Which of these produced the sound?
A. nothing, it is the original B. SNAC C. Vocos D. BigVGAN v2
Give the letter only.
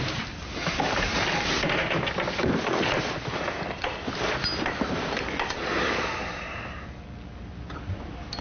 A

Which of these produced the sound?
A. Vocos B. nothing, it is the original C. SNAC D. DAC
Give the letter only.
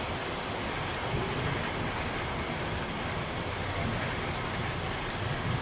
B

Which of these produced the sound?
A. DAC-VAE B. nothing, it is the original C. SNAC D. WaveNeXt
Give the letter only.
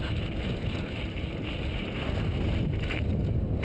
B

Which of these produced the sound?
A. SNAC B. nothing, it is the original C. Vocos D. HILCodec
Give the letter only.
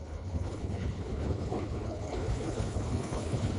D